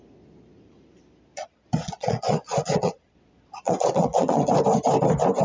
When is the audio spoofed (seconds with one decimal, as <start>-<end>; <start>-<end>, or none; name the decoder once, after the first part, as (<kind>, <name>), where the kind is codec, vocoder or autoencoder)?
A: 1.3-4.5 (vocoder, Vocos)